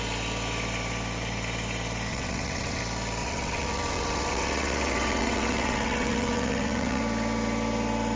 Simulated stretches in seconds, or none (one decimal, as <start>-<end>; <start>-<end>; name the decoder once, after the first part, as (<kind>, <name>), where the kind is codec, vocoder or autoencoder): 2.1-2.8 (vocoder, WaveNeXt); 3.2-7.0